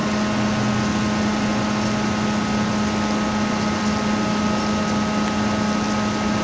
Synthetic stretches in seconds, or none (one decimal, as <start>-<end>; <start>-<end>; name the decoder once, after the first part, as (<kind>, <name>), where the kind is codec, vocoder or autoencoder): none